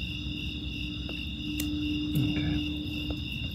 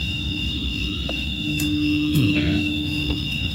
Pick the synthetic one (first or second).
second